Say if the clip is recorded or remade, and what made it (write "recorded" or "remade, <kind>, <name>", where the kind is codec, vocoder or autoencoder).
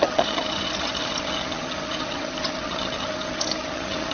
remade, vocoder, HiFi-GAN